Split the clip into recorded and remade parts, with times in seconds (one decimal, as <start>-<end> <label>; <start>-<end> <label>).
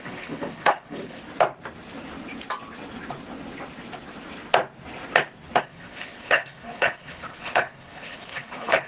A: 0.0-1.2 remade; 1.2-5.6 recorded; 5.6-8.9 remade